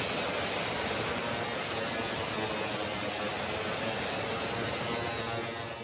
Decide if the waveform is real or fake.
real